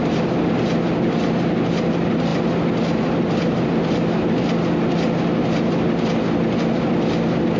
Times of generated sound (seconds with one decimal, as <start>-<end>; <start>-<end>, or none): none